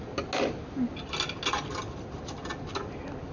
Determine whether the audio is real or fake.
real